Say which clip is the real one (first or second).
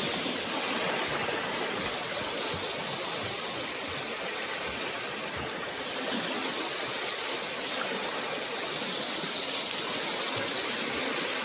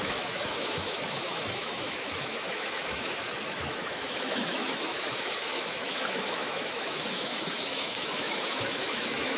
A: first